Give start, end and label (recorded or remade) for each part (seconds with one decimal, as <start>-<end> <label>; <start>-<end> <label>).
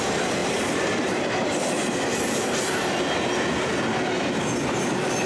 0.0-5.3 recorded